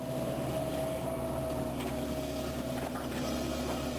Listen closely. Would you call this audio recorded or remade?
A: recorded